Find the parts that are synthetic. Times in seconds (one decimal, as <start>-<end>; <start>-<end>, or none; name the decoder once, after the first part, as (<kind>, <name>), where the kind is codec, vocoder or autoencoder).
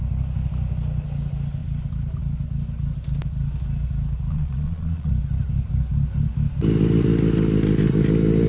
4.3-5.1 (vocoder, Vocos)